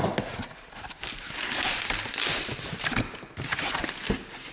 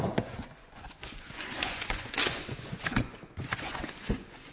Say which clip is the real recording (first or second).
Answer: first